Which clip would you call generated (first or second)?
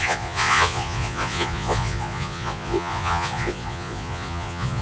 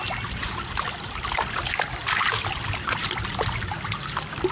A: first